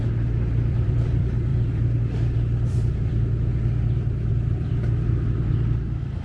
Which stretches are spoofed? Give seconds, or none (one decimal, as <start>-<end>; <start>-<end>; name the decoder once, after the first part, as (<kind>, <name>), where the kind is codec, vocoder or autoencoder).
0.0-3.5 (vocoder, BigVGAN v2); 4.3-6.2